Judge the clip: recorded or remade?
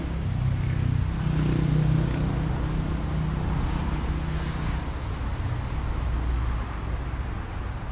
recorded